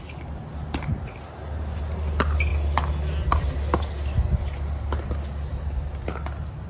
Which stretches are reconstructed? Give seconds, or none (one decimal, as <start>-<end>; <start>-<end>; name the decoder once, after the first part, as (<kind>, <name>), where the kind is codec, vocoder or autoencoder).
none